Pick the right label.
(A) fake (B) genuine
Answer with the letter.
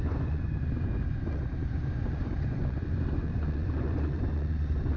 A